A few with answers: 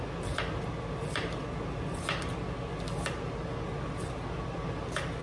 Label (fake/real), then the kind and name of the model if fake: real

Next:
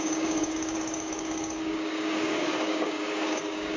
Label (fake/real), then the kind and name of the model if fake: fake, codec, DAC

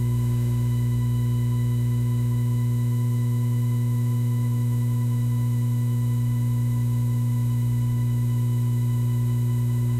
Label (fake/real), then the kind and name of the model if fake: fake, autoencoder, DAC-VAE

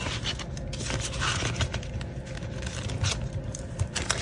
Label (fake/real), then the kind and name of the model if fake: real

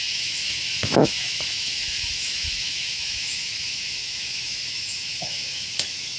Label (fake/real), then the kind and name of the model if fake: fake, autoencoder, DAC-VAE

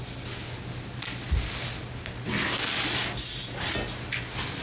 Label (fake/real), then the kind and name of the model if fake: real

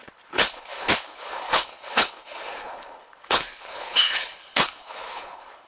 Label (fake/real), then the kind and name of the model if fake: fake, codec, HILCodec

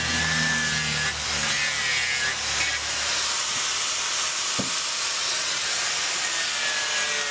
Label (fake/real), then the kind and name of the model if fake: real